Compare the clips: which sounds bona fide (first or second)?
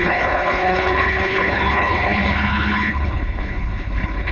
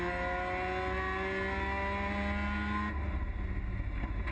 second